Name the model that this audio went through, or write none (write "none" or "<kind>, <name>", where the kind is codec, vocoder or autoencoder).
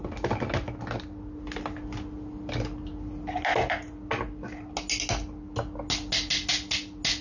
none